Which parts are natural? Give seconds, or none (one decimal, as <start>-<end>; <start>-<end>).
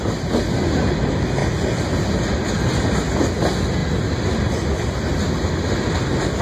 0.0-6.4